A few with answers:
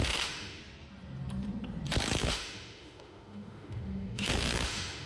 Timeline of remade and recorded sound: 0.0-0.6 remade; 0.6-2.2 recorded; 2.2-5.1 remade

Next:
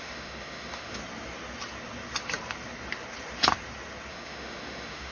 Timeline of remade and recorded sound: 0.0-1.0 remade; 1.0-4.1 recorded; 4.1-5.1 remade

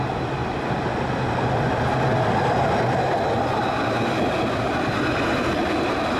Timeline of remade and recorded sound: 0.0-6.2 recorded

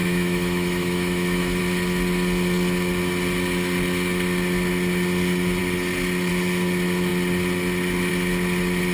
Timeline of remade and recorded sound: 0.0-1.6 remade; 1.6-8.9 recorded

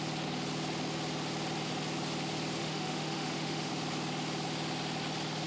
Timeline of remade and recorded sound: 0.0-2.6 recorded; 2.6-3.7 remade; 3.7-5.5 recorded

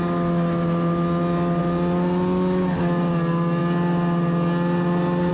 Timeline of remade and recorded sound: 0.0-5.3 recorded